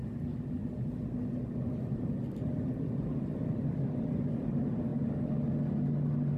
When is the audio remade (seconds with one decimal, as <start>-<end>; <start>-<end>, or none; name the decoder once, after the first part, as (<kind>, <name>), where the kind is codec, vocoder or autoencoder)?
none